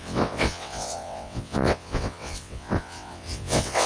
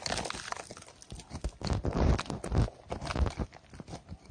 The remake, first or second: first